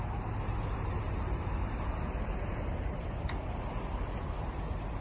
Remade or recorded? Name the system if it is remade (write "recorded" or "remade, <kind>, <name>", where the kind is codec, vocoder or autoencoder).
recorded